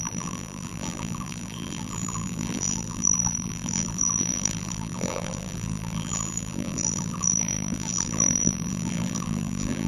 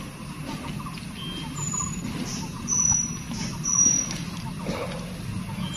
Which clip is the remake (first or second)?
first